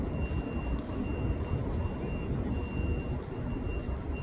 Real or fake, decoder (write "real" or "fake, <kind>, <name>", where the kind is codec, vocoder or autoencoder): real